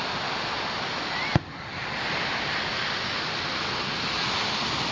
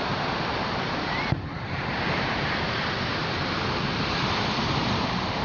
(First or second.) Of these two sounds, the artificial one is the second